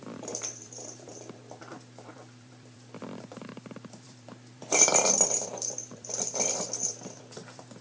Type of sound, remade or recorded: remade